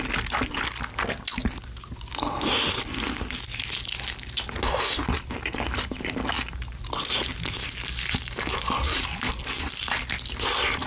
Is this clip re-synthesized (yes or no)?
no